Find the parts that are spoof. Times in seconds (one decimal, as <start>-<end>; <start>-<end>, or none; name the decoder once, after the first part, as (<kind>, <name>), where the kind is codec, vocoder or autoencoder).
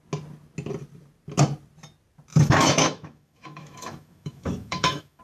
2.3-5.2 (autoencoder, DAC-VAE)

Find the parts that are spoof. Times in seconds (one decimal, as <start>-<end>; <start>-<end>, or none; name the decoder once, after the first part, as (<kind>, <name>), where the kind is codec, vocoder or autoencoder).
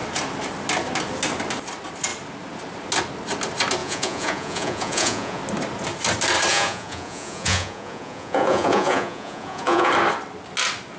3.8-5.4 (vocoder, Vocos); 6.5-9.9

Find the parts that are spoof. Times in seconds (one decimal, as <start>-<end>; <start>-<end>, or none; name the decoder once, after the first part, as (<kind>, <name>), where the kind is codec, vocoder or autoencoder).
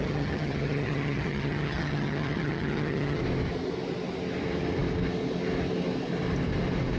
0.0-3.2 (vocoder, HiFi-GAN)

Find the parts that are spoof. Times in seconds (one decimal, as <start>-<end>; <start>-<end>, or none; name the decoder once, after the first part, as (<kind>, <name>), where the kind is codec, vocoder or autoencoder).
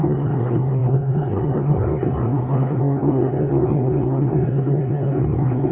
0.0-5.7 (codec, SNAC)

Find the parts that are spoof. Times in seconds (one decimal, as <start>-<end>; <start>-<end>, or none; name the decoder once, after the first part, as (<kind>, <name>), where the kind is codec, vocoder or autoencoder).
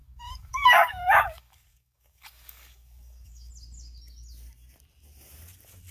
0.0-3.5 (codec, DAC)